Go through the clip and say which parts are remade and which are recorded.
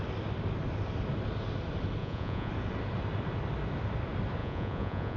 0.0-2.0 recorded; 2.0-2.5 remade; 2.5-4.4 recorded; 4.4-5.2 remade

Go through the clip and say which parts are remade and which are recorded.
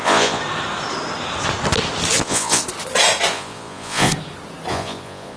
0.0-0.4 remade; 0.4-2.2 recorded; 2.2-2.6 remade; 2.6-3.3 recorded; 3.3-4.1 remade; 4.1-4.7 recorded; 4.7-5.4 remade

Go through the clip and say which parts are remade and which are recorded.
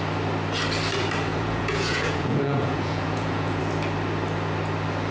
0.0-1.3 recorded; 1.3-3.6 remade; 3.6-5.1 recorded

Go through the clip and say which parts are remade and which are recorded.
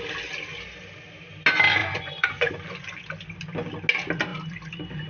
0.0-1.8 recorded; 1.8-2.5 remade; 2.5-5.1 recorded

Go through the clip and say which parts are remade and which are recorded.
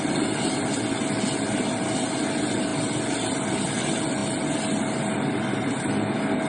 0.0-6.5 recorded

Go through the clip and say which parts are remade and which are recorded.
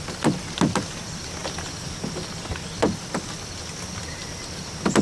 0.0-5.0 recorded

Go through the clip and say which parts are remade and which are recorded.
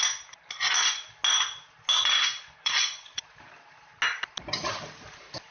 0.0-2.3 recorded; 2.3-3.2 remade; 3.2-5.5 recorded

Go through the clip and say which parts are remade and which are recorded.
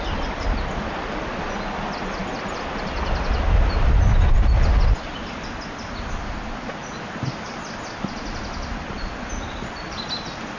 0.0-10.6 recorded